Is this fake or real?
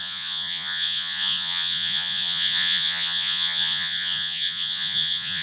fake